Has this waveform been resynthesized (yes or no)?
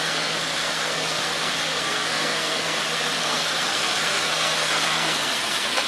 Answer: yes